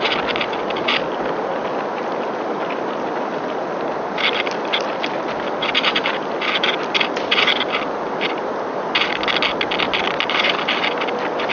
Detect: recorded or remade recorded